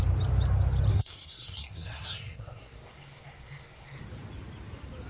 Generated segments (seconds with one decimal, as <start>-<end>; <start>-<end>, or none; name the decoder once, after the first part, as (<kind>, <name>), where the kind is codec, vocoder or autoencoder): 0.9-4.0 (codec, SNAC)